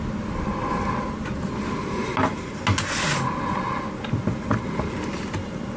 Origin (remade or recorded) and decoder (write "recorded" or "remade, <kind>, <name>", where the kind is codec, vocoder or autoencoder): recorded